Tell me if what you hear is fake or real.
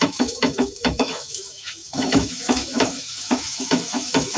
fake